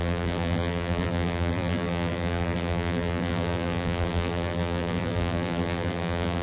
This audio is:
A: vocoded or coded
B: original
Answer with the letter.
A